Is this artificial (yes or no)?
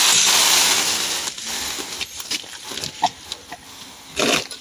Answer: no